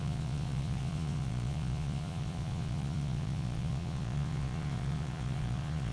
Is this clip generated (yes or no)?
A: yes